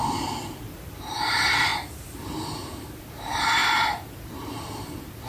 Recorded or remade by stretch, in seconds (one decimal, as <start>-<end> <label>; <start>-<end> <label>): 0.0-5.3 recorded